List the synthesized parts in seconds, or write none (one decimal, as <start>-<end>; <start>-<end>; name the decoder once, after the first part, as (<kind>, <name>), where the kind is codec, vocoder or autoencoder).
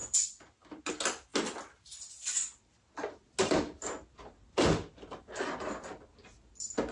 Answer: none